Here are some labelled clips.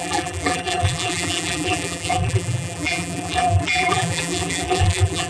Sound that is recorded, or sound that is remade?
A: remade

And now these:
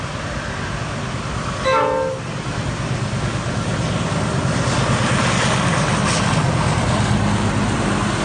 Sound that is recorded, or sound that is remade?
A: recorded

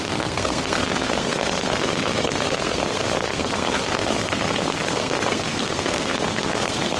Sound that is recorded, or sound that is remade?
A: remade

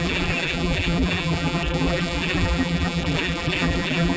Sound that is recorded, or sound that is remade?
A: remade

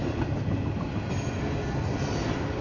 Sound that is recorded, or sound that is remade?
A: recorded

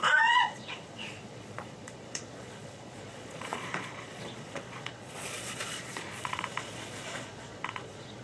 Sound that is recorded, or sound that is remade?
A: remade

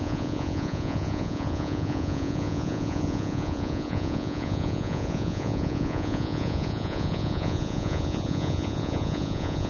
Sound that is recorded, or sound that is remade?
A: remade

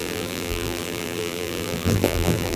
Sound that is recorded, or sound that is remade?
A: remade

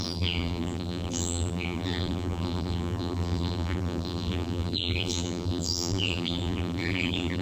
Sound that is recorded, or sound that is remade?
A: remade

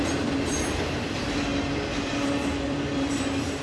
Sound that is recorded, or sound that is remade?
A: recorded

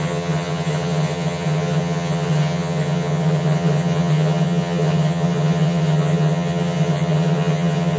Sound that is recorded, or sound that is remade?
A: remade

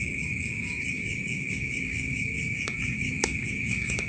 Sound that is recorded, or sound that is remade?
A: remade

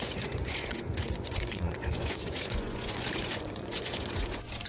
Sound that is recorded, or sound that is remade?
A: remade